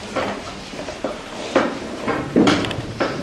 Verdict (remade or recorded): remade